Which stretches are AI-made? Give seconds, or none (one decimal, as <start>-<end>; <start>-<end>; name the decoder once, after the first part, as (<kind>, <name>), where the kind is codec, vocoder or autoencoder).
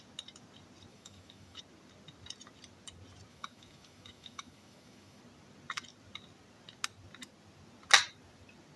0.9-1.6 (autoencoder, DAC-VAE); 3.3-5.2